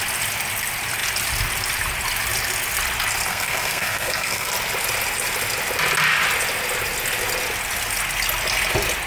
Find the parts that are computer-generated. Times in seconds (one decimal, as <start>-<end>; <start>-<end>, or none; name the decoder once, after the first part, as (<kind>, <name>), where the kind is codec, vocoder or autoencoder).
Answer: 3.3-4.5 (codec, SNAC)